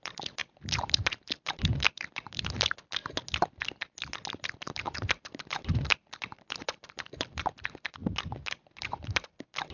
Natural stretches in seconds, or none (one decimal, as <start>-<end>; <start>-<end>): 3.0-4.3; 8.0-8.6